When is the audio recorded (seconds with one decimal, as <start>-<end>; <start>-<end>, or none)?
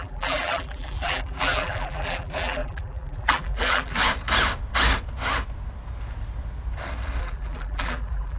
4.0-7.2